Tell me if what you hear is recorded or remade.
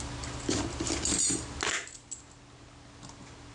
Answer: recorded